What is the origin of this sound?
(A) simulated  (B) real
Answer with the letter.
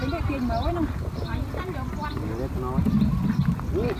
B